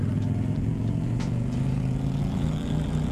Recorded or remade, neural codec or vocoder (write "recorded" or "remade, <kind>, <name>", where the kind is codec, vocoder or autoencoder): remade, vocoder, BigVGAN v2